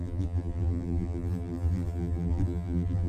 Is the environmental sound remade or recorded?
remade